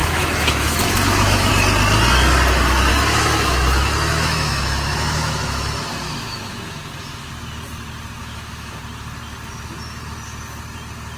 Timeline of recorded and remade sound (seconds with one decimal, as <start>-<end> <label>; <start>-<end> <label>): 0.0-1.5 remade; 1.5-2.9 recorded; 2.9-7.3 remade; 7.3-8.2 recorded; 8.2-8.8 remade; 8.8-11.2 recorded